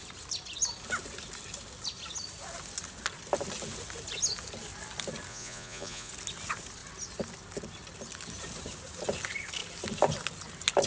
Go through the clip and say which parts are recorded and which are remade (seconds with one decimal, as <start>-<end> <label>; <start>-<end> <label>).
0.0-5.3 recorded; 5.3-6.1 remade; 6.1-10.9 recorded